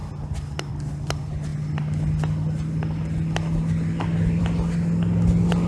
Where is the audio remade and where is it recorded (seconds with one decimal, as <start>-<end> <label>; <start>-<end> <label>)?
0.0-5.7 recorded